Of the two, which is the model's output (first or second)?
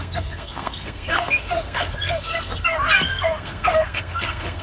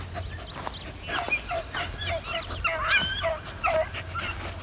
first